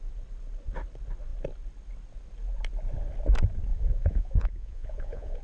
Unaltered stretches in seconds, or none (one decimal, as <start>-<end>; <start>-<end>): 0.0-3.7